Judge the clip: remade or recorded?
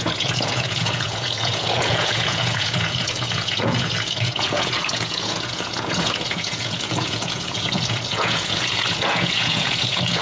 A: remade